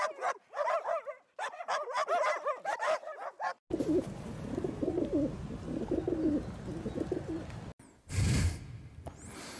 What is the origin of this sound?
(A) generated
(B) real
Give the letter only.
B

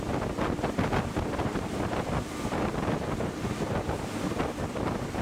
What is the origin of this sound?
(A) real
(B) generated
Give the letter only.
A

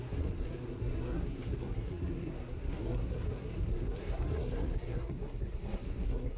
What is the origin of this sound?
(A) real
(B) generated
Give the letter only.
B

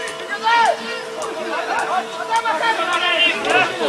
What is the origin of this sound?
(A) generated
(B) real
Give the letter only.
B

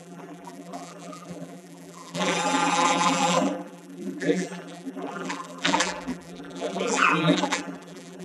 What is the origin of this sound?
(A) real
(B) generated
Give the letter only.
B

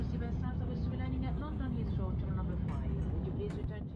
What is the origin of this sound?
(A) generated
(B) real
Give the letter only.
B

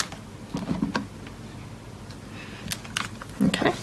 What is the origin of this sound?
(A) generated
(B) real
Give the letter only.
B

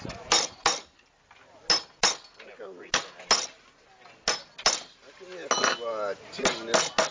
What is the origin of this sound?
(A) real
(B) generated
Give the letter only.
A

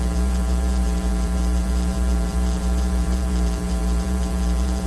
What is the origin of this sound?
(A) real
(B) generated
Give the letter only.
B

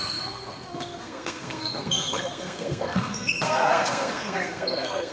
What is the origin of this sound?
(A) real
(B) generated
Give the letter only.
B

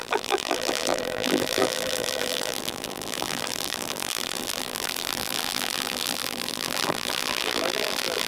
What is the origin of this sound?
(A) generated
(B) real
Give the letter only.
A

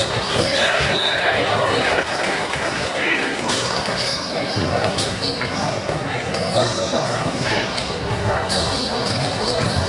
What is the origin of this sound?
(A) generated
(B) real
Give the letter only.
A